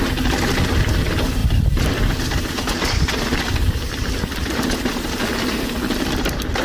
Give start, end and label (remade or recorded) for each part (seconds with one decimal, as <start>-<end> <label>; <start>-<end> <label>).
0.0-1.4 recorded; 1.4-5.4 remade; 5.4-6.6 recorded